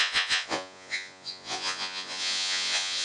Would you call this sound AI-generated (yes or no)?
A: yes